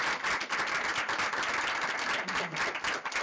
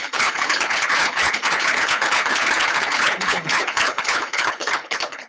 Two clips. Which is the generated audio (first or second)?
second